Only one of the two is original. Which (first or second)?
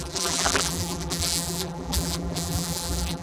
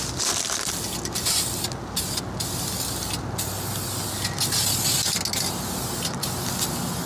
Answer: second